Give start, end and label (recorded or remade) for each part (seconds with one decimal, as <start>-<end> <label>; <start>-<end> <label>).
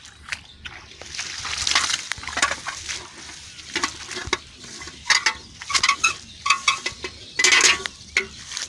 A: 0.0-8.7 recorded